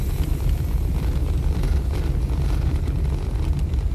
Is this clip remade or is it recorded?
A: recorded